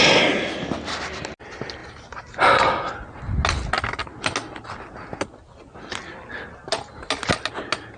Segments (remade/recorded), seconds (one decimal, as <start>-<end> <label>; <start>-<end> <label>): 0.0-8.0 recorded